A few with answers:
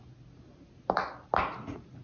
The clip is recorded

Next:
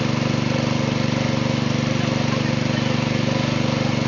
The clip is recorded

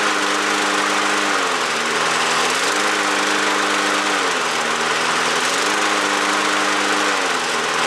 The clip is recorded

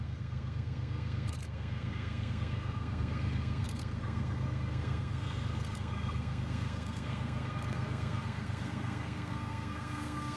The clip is remade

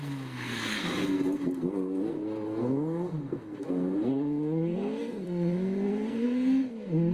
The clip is remade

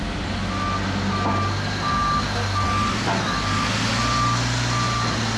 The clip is recorded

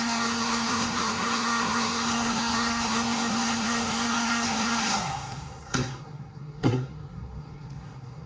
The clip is remade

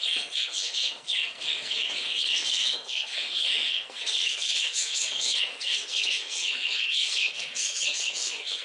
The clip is remade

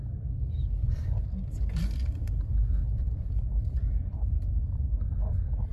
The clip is recorded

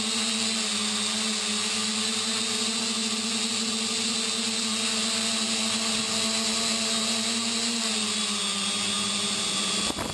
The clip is recorded